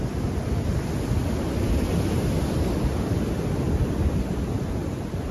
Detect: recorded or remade recorded